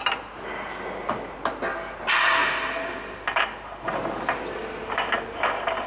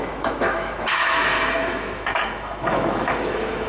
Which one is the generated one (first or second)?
second